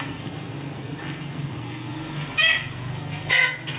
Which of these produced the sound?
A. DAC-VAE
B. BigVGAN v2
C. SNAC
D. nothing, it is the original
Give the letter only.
C